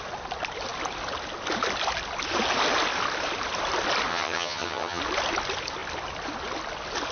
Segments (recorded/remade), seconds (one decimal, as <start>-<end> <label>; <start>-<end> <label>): 0.0-4.1 recorded; 4.1-5.0 remade; 5.0-7.1 recorded